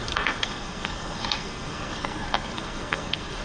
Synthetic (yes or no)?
yes